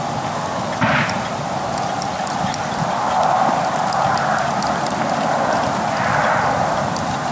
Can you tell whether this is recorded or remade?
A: recorded